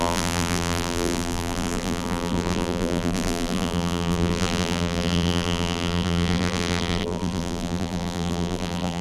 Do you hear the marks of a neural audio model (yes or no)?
yes